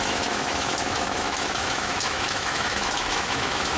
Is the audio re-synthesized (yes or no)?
yes